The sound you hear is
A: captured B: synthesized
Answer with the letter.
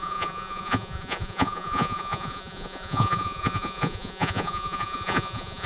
B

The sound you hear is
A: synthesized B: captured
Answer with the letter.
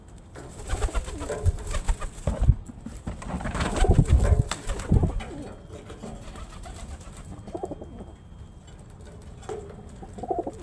B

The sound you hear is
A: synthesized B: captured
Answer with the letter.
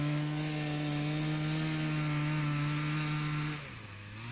B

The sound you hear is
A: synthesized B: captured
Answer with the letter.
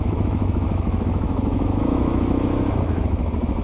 A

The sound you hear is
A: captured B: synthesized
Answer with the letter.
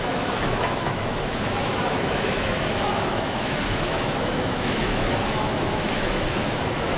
B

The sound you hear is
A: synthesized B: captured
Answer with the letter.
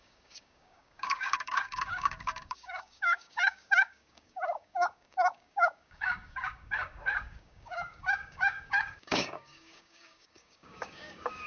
A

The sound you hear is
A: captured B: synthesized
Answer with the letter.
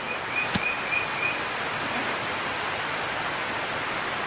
A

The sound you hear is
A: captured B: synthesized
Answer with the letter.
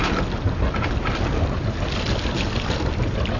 A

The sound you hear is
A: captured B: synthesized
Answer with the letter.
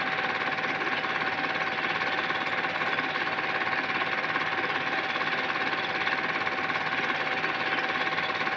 A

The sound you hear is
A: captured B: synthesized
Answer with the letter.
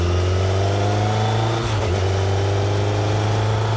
A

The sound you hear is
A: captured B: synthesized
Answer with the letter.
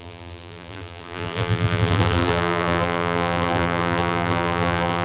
B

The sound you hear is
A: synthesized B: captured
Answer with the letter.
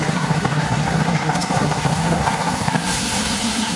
A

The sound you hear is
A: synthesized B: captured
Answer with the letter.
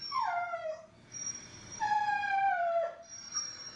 A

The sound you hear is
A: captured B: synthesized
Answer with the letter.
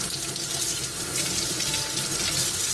A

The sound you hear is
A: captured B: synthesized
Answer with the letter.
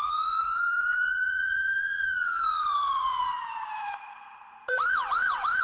B